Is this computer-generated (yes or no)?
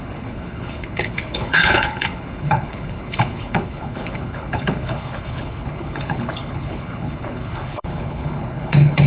yes